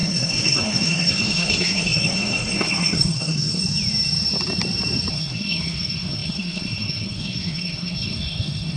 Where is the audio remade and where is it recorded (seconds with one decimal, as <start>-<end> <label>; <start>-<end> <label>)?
0.0-3.6 remade; 3.6-5.1 recorded; 5.1-8.8 remade

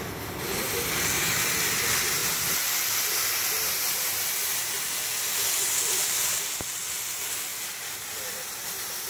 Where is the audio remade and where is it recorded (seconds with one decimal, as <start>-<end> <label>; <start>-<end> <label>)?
0.0-9.1 recorded

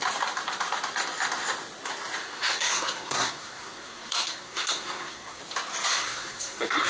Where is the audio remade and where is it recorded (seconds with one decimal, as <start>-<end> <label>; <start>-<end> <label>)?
0.0-2.2 recorded; 2.2-5.4 remade; 5.4-5.9 recorded; 5.9-6.9 remade

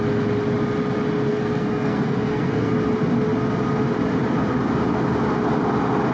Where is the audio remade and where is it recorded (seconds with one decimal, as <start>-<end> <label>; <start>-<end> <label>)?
0.0-1.3 recorded; 1.3-2.7 remade; 2.7-6.1 recorded

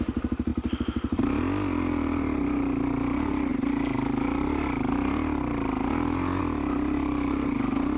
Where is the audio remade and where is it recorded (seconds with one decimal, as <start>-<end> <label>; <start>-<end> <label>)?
0.0-8.0 recorded

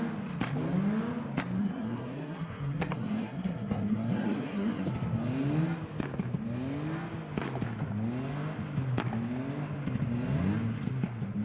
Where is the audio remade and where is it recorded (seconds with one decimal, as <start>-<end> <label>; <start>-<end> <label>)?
0.0-1.6 recorded; 1.6-4.9 remade; 4.9-11.4 recorded

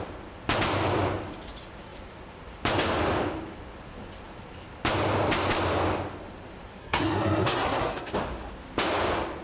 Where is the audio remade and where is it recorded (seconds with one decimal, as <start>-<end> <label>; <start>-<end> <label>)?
0.0-6.8 recorded; 6.8-8.1 remade; 8.1-9.4 recorded